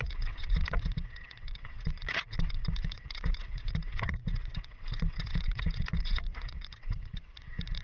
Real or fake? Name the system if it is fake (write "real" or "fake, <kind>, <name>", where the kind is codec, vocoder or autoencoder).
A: fake, vocoder, WaveNeXt